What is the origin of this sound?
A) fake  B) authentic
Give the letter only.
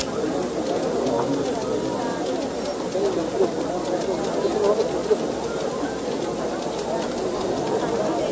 B